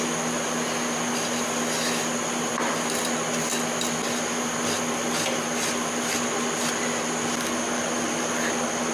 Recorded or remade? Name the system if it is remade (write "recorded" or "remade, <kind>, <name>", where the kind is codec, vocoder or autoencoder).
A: recorded